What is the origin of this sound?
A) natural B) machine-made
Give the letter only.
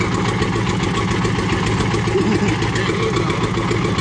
A